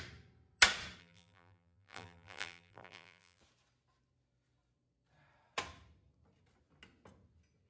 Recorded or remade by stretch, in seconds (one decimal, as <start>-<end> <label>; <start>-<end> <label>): 0.0-1.0 recorded; 1.0-3.4 remade; 3.4-7.7 recorded